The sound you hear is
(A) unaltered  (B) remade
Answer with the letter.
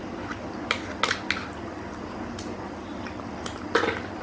A